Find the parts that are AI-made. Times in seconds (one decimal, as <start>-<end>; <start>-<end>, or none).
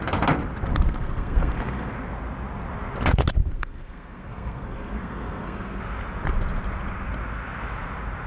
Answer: 0.7-1.9; 3.4-5.8